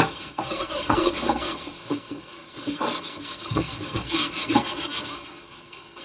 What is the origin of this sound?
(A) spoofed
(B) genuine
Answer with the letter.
A